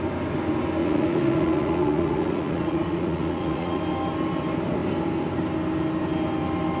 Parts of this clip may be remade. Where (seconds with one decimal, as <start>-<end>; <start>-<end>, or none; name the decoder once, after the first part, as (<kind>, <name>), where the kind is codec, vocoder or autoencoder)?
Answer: 0.8-3.8 (vocoder, Vocos)